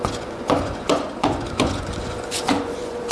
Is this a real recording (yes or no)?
no